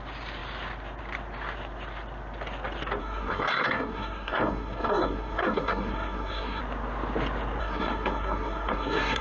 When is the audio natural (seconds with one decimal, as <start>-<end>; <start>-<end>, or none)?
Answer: 0.0-3.0; 6.6-7.6